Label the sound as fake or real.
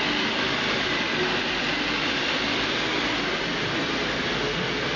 real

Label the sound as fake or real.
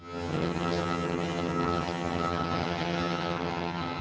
fake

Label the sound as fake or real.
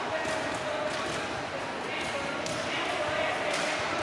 real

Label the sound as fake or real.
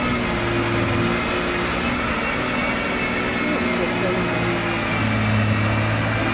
real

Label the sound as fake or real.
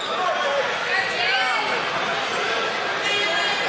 real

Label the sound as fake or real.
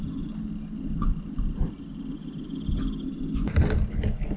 real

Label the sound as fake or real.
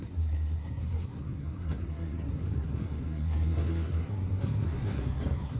fake